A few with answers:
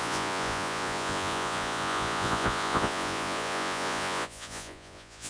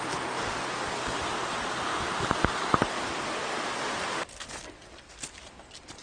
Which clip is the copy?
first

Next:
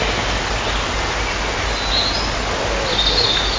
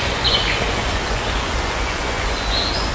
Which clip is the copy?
second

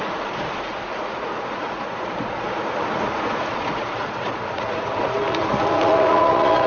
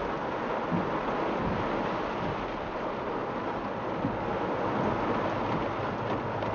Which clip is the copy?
first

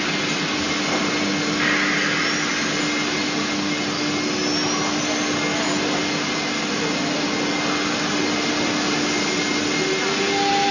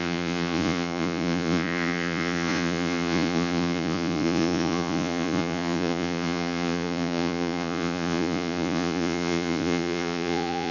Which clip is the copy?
second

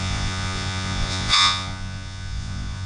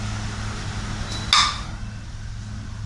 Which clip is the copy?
first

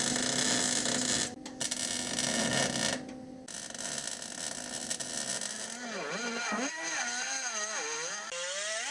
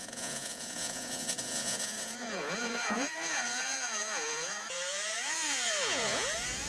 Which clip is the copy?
second